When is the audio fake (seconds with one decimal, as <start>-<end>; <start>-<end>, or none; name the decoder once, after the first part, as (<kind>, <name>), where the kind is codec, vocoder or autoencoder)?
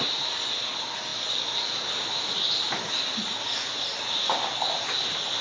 none